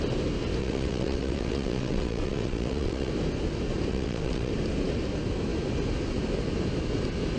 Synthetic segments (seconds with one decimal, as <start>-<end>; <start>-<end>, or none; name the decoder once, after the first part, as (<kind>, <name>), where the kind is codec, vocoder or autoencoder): 0.6-3.1 (vocoder, WaveNeXt); 3.9-4.5